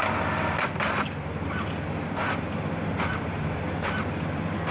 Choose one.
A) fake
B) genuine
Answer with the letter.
B